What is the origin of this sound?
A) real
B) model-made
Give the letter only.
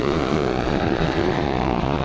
B